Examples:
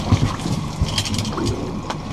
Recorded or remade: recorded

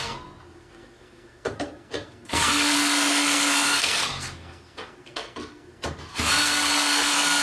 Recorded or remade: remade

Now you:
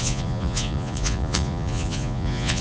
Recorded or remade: remade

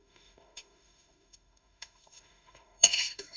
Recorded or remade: remade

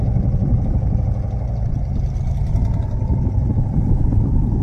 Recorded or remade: recorded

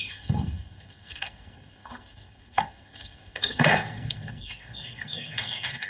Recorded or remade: remade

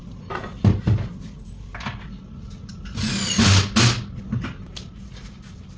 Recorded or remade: recorded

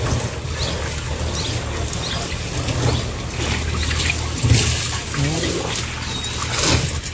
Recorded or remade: recorded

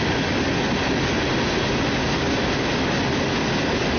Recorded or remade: recorded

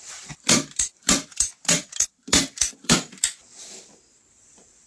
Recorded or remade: remade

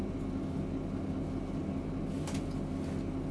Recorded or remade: recorded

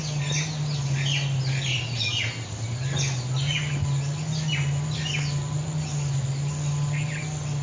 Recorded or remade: recorded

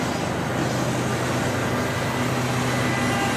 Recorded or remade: recorded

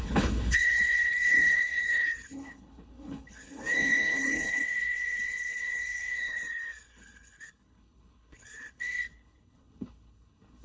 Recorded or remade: remade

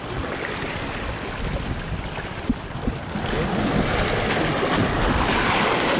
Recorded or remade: recorded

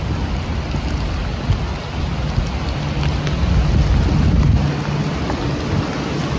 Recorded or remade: recorded